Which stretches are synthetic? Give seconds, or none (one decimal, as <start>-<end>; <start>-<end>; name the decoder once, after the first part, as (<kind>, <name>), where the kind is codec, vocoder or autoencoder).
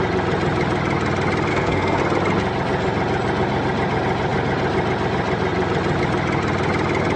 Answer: 1.5-2.0 (codec, SNAC)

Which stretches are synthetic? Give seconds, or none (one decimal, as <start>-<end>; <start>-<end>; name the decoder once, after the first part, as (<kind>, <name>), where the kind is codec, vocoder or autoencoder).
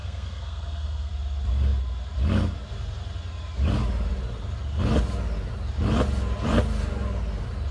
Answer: 0.0-1.1 (codec, SNAC)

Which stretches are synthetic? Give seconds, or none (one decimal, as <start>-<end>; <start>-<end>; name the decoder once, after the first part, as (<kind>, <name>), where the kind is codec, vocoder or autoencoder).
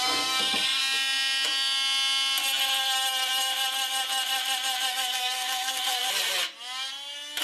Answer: 0.0-0.8 (codec, SNAC); 4.9-6.0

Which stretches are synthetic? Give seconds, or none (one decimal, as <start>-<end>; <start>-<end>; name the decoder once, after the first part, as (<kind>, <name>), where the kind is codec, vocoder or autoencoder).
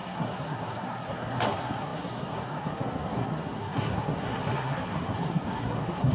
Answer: 0.0-6.1 (codec, SNAC)